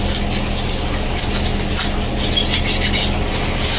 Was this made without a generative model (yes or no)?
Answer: yes